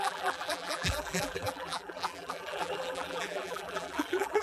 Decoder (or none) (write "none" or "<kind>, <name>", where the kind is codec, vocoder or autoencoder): vocoder, BigVGAN v2